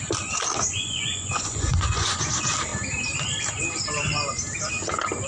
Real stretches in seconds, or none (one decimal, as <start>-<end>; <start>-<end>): 0.0-0.7; 2.3-5.3